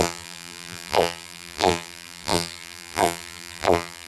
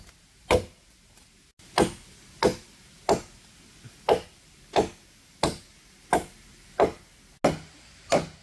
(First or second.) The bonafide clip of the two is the second